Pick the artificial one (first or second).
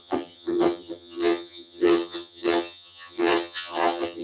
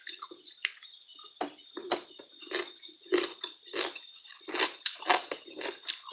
first